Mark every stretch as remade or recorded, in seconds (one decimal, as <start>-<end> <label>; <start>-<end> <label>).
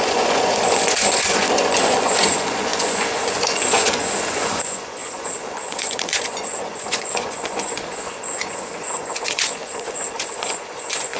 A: 0.0-11.2 remade